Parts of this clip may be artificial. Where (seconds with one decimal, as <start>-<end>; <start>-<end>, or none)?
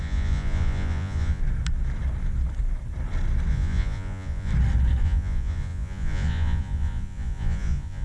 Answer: 0.0-1.4; 3.5-4.5; 5.0-8.0